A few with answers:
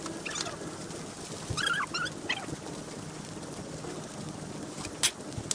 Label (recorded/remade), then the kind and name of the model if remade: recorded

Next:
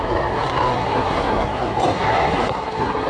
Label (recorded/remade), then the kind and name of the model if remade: remade, codec, SNAC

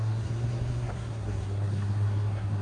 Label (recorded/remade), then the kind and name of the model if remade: remade, codec, SNAC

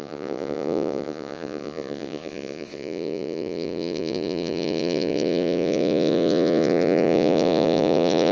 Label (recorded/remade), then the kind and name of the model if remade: remade, vocoder, Vocos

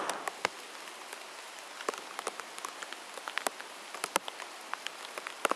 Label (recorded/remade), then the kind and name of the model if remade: recorded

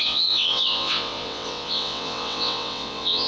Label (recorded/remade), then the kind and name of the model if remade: remade, vocoder, WaveNeXt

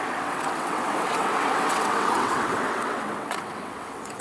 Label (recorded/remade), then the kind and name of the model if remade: remade, vocoder, WaveNeXt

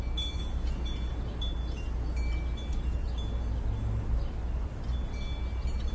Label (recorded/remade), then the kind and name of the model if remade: recorded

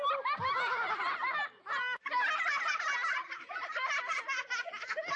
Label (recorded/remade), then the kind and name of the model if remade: recorded